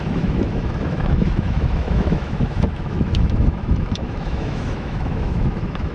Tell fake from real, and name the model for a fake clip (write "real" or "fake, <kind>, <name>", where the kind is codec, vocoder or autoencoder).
fake, autoencoder, DAC-VAE